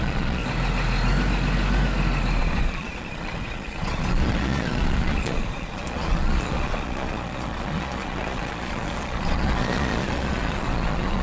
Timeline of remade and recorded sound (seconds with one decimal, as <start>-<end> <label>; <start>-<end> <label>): 0.0-0.4 remade; 0.4-2.4 recorded; 2.4-11.2 remade